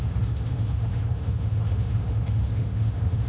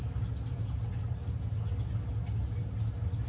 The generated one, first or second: first